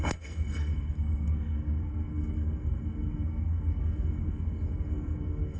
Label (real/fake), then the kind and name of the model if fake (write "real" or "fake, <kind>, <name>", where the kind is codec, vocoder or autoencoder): fake, codec, SNAC